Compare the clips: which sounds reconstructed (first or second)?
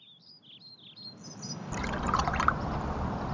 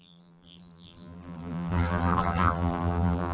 second